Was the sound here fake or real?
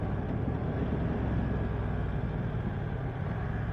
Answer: real